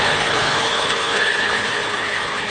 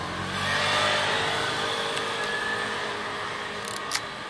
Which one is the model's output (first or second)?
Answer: first